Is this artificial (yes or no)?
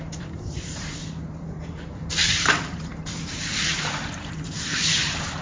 yes